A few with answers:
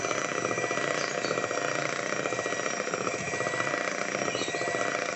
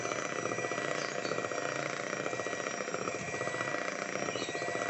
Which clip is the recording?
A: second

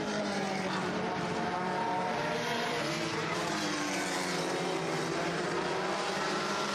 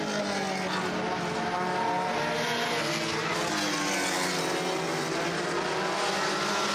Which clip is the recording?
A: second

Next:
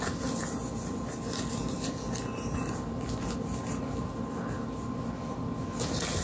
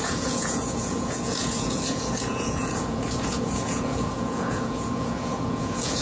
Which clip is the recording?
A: first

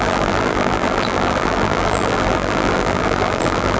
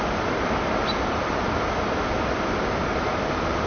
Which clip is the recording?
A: second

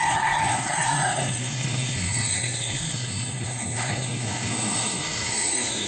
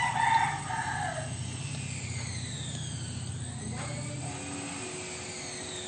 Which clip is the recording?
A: second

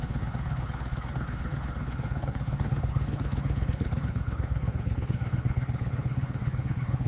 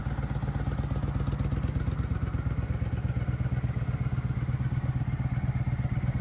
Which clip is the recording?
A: second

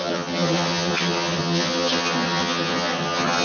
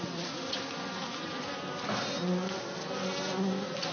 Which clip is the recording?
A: second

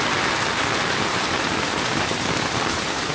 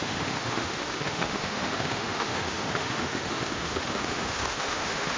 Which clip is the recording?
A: first